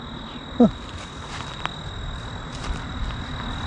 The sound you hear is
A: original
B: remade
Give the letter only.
A